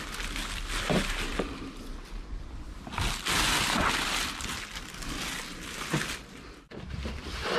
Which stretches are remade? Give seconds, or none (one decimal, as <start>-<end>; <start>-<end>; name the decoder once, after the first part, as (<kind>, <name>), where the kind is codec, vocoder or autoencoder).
none